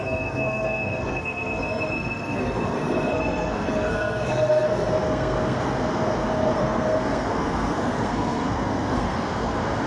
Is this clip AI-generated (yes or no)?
yes